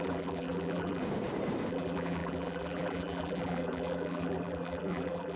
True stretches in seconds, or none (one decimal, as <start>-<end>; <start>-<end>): 1.0-1.7